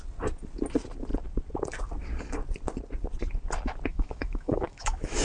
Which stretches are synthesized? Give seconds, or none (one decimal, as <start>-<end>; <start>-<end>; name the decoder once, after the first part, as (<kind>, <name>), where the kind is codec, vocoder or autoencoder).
3.9-5.2 (autoencoder, DAC-VAE)